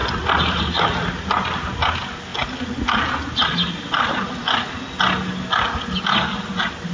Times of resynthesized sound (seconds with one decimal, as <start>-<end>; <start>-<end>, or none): none